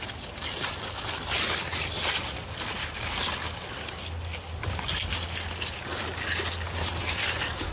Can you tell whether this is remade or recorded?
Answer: recorded